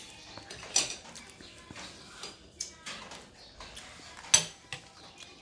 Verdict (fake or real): real